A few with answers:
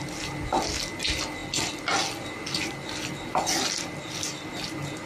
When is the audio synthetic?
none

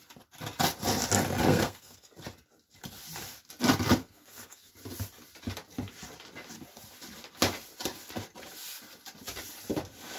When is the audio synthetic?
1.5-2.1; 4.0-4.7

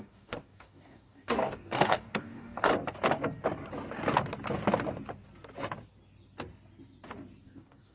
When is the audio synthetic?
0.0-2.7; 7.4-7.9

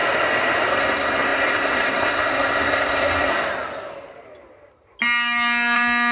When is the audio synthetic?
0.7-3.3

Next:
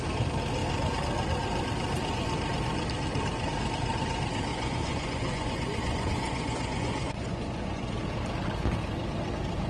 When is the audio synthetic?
4.5-7.9

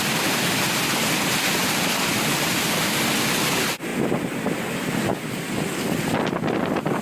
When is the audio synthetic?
none